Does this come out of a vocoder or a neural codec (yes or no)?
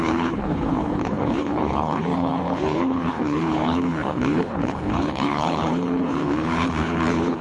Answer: yes